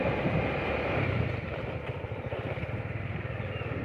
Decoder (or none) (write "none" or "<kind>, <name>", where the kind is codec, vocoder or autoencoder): none